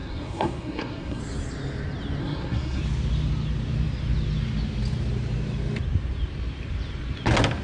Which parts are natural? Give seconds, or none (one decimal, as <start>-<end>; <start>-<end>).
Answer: 1.2-2.2; 2.8-7.6